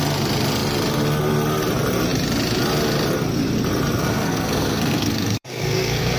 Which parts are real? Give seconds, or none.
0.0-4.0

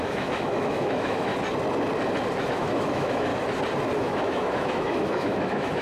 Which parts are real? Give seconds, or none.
1.3-2.5; 3.3-4.0

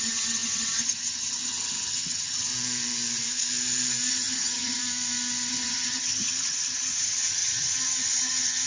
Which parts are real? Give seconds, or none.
2.5-4.1; 4.8-5.5

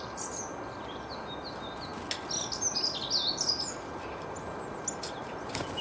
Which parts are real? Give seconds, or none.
0.0-5.8

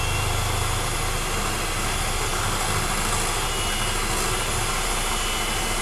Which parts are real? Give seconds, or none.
0.0-5.8

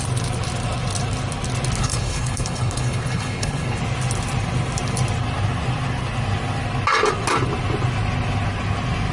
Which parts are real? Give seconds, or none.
0.0-1.8; 3.8-9.1

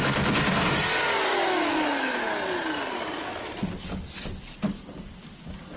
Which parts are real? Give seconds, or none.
0.0-1.3; 2.2-5.8